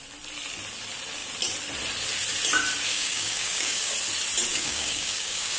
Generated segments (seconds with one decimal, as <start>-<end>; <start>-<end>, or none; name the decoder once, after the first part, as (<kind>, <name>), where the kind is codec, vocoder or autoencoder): 2.9-3.9 (codec, DAC); 4.5-5.6